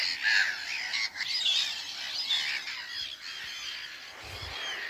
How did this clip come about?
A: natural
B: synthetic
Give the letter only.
A